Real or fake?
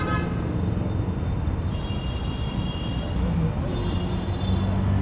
real